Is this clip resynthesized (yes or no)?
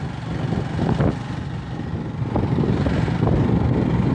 no